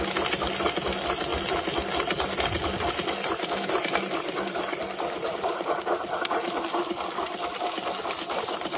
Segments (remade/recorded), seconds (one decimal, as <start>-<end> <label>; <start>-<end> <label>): 0.0-5.3 recorded; 5.3-6.5 remade; 6.5-8.8 recorded

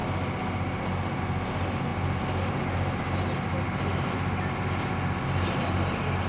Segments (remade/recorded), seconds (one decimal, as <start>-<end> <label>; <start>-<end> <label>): 0.0-6.3 recorded

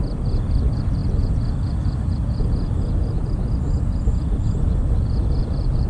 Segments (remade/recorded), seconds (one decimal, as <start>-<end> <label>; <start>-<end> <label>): 0.0-5.9 recorded